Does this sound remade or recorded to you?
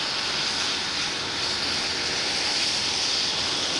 recorded